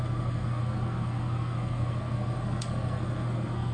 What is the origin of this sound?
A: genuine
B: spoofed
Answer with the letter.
B